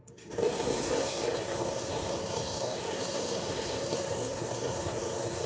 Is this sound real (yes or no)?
no